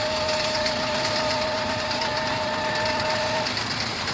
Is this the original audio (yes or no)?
yes